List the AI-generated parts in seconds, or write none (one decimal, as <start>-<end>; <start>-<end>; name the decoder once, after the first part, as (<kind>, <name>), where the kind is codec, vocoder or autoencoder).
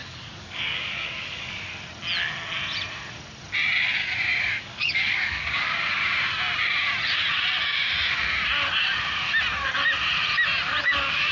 0.0-1.7 (codec, DAC); 4.4-6.0; 10.8-11.3